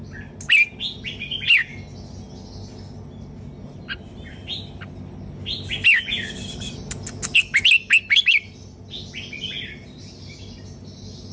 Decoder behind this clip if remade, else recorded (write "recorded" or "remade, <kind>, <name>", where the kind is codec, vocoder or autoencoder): recorded